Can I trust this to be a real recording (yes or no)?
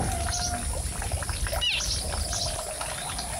yes